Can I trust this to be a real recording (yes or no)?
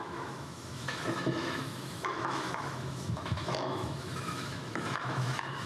no